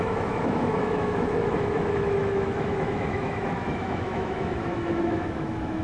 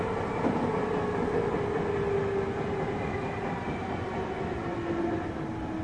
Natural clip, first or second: second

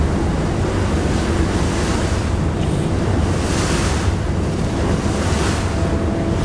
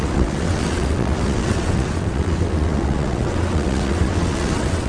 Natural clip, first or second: first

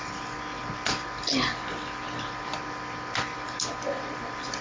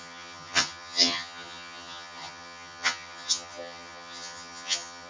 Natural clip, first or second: first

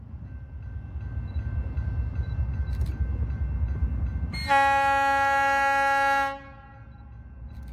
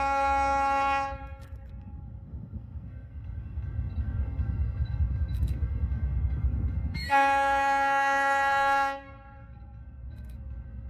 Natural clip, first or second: first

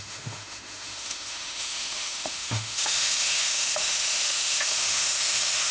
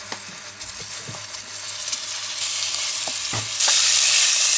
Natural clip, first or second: second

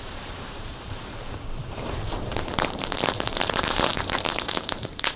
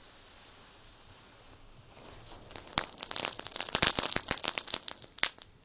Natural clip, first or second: second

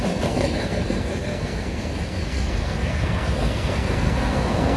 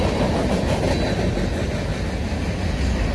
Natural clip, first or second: second